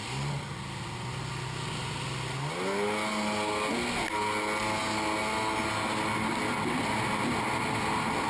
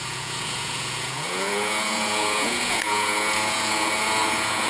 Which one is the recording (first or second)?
first